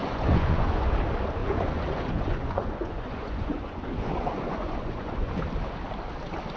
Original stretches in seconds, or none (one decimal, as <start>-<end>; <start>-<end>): 0.9-1.4; 5.4-6.6